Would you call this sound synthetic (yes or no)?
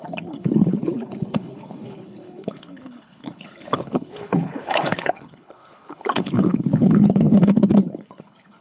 yes